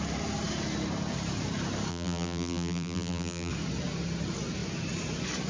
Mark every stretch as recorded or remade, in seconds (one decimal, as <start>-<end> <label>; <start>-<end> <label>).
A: 0.0-1.9 recorded; 1.9-3.5 remade; 3.5-5.5 recorded